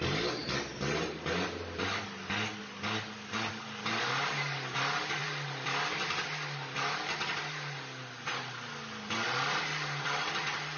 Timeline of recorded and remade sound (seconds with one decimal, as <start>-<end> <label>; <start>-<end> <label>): 0.0-10.8 recorded